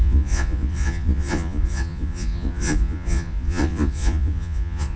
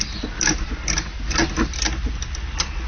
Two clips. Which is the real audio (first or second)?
second